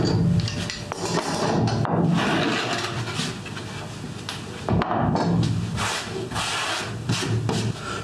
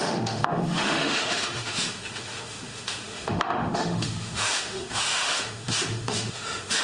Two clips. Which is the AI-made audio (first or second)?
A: second